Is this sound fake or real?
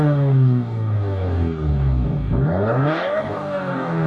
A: fake